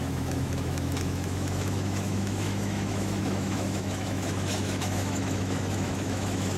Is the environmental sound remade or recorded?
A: remade